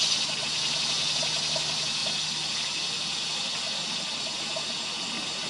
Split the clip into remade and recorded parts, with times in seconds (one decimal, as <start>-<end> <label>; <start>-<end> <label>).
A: 0.0-5.5 recorded